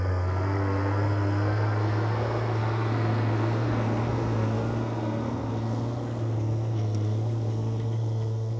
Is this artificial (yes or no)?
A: yes